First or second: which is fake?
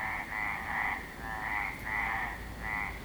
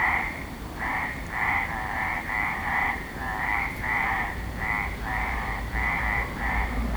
second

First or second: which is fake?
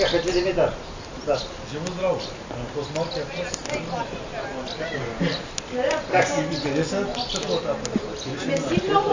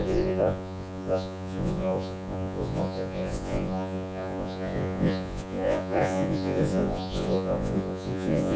second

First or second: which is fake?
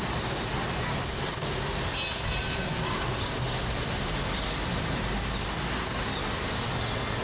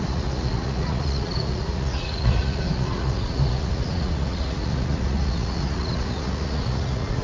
second